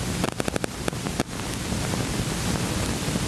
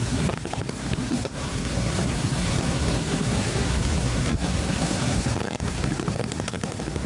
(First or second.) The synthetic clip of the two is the second